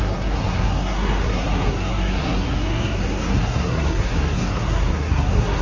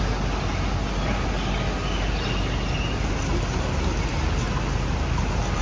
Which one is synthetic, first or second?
first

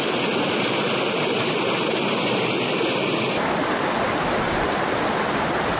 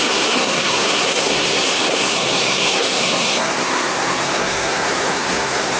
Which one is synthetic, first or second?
second